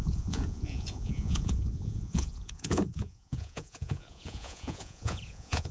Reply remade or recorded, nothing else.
remade